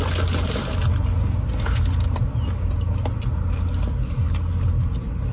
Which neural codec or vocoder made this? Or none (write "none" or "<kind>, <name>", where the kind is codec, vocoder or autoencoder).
none